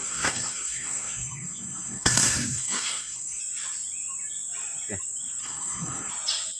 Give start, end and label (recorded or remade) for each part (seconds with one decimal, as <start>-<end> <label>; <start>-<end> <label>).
0.0-3.4 remade; 3.4-5.4 recorded; 5.4-6.1 remade; 6.1-6.6 recorded